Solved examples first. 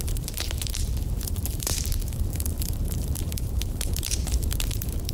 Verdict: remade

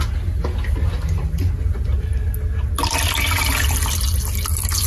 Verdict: recorded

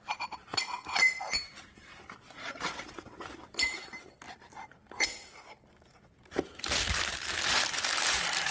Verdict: remade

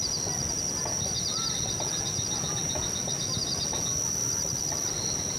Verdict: recorded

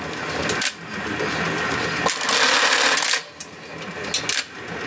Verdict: recorded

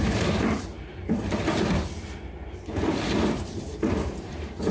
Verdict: remade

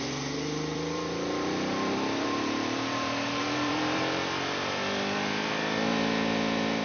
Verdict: remade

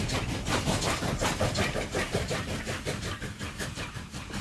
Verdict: remade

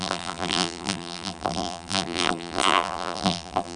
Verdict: remade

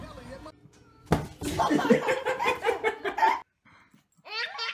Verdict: recorded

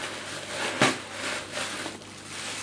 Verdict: recorded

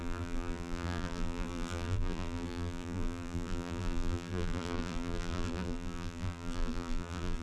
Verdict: remade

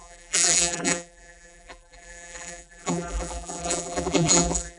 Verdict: remade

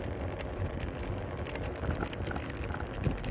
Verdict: recorded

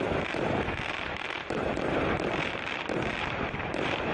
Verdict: remade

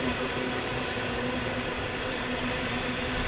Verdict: remade